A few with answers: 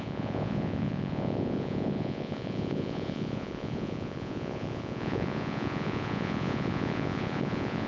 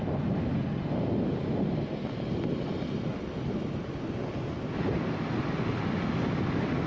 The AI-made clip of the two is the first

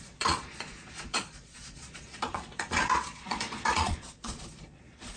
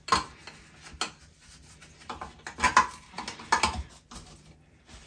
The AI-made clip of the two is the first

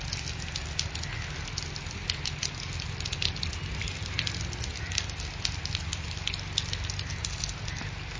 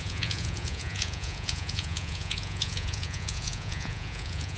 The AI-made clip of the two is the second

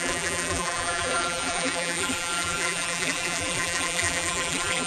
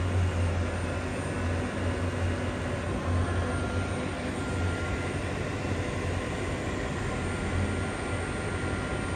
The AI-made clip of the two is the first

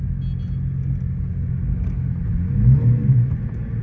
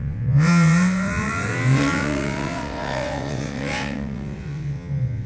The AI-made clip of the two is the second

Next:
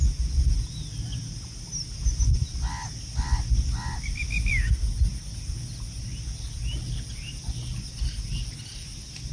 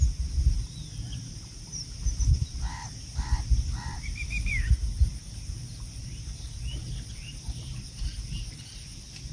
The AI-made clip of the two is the second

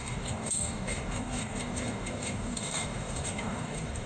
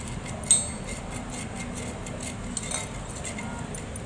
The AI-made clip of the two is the first